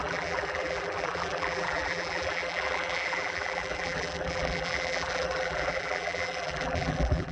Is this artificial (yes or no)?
yes